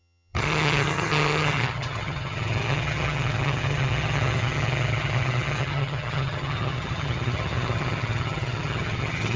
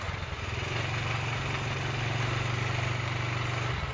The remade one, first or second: first